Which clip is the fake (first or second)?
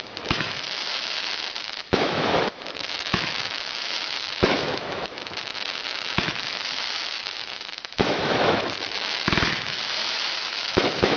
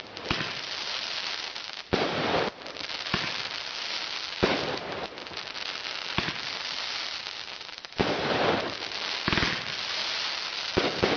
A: first